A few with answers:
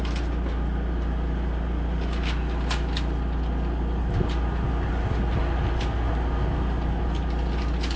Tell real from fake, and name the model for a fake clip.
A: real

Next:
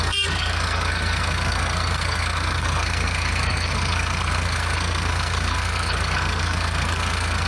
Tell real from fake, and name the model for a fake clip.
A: fake, codec, SNAC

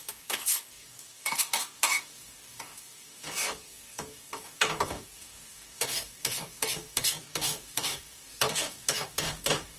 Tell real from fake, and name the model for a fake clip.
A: fake, codec, DAC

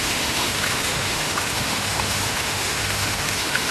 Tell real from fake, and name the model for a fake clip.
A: fake, autoencoder, DAC-VAE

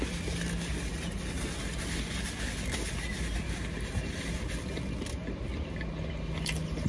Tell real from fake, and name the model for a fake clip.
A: real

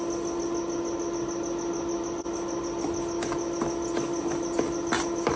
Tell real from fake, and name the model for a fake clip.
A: real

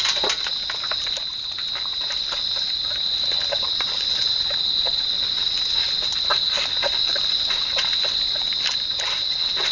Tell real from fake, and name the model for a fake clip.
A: real